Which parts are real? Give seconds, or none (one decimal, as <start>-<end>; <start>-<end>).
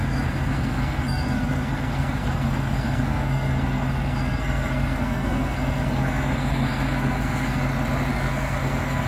7.6-8.1